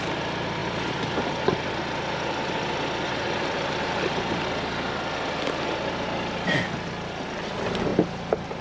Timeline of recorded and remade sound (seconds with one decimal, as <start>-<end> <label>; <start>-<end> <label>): 0.0-8.6 recorded